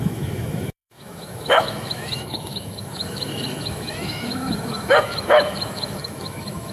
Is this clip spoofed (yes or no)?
yes